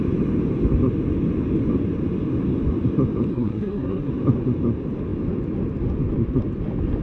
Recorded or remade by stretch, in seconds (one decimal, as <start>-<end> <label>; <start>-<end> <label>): 0.0-3.3 recorded; 3.3-4.1 remade; 4.1-7.0 recorded